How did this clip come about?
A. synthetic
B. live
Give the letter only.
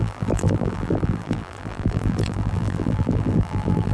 A